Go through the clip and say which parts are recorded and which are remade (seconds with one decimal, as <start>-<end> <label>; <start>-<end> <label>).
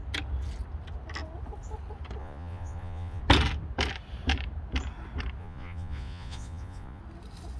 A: 0.0-2.2 recorded; 2.2-3.2 remade; 3.2-5.4 recorded; 5.4-7.0 remade; 7.0-7.6 recorded